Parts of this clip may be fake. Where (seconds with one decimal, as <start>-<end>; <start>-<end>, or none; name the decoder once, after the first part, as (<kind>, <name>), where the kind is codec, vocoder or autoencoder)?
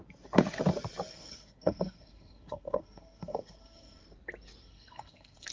1.1-4.0 (codec, SNAC); 4.6-5.5